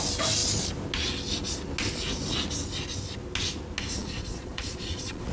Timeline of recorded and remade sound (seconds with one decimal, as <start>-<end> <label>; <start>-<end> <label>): 0.0-4.0 recorded; 4.0-5.3 remade